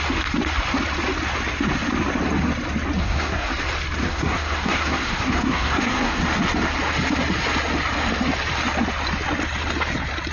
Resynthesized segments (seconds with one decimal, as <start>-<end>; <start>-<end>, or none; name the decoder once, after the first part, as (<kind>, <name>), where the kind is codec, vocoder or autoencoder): 3.0-3.5 (codec, SNAC); 4.0-6.2

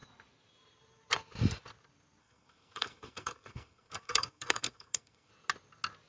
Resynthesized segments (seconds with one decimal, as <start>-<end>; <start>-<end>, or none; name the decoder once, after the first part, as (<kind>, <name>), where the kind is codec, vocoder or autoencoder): 2.2-5.3 (codec, SNAC)

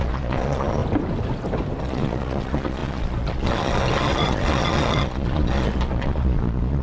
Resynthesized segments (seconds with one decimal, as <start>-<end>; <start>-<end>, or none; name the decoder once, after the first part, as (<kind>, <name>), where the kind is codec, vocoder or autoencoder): 0.0-0.8 (vocoder, Vocos); 1.8-6.8

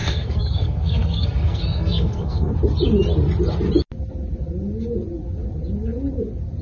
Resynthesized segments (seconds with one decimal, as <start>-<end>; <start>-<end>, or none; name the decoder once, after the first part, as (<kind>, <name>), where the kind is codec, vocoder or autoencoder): 0.0-2.5 (codec, SNAC)

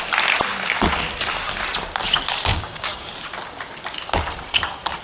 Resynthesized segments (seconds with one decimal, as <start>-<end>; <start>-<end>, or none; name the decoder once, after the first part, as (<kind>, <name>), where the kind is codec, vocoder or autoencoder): 2.5-3.1 (codec, DAC)